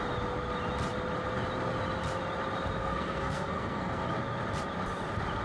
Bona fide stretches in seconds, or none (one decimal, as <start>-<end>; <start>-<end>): 0.0-2.8; 4.1-5.4